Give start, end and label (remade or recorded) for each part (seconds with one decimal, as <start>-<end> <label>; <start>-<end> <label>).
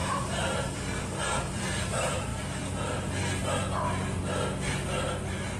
0.0-5.6 recorded